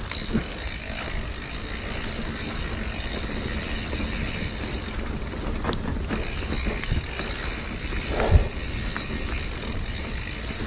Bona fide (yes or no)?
yes